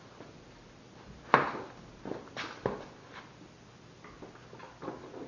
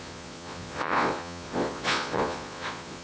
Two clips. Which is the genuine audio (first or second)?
first